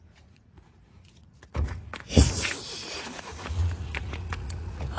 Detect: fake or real fake